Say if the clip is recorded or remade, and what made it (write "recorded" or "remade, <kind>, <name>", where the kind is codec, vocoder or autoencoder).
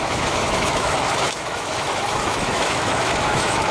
remade, autoencoder, DAC-VAE